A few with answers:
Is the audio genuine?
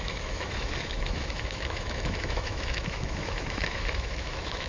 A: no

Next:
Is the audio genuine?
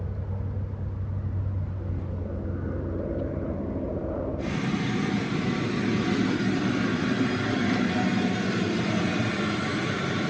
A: yes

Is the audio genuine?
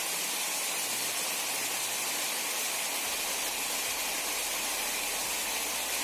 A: yes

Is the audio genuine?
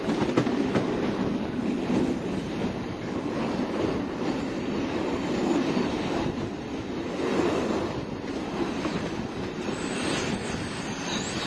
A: yes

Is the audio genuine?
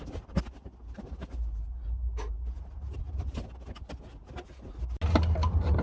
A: yes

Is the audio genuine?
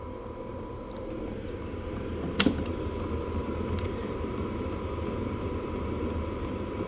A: no